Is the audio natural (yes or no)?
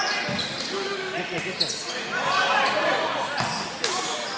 yes